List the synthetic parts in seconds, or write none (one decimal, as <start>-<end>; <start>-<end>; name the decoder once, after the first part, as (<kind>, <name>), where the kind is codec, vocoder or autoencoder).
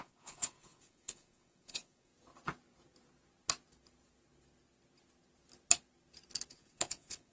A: 0.0-2.1 (vocoder, Vocos); 6.5-7.3